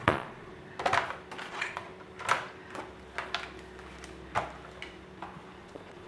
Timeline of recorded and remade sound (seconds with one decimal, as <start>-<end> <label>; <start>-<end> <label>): 0.0-0.5 remade; 0.5-1.5 recorded; 1.5-1.9 remade; 1.9-5.6 recorded; 5.6-6.1 remade